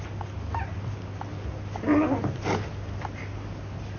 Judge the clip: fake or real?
real